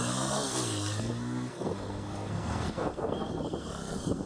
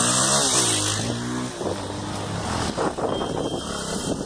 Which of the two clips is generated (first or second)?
first